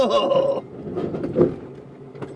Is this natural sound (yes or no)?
yes